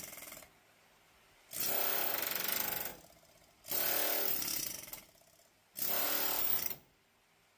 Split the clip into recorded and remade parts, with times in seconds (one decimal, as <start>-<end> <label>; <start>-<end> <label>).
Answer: 0.0-7.6 recorded